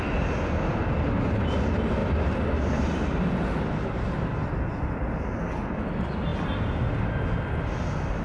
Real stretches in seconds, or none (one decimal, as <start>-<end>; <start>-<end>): 0.0-8.2